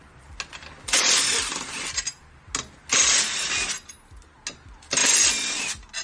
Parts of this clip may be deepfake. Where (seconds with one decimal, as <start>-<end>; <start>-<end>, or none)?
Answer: none